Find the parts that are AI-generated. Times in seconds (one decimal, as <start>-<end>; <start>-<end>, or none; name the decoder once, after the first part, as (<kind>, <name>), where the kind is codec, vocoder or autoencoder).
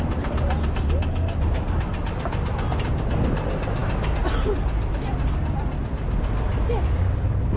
none